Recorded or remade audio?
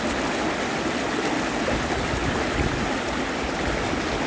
recorded